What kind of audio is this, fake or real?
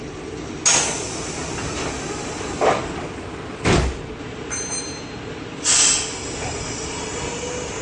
real